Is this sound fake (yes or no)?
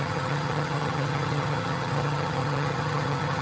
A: yes